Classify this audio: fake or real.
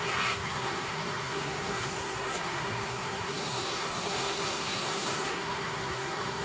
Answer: fake